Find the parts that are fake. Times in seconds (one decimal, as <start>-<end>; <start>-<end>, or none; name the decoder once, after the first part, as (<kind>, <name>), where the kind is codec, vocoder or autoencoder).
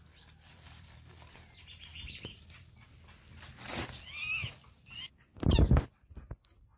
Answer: 0.0-6.8 (vocoder, BigVGAN v2)